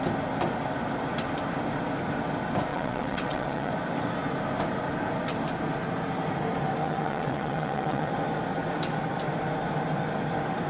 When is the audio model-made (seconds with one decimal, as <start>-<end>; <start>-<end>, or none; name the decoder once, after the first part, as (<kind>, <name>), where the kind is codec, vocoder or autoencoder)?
2.7-3.7 (vocoder, WaveNeXt); 6.8-8.1